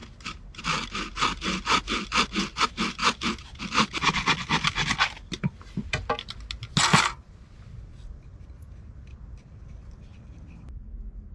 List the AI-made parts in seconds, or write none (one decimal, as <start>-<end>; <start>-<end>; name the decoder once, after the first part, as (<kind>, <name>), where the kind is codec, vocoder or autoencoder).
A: none